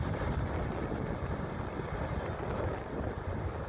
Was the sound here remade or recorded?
recorded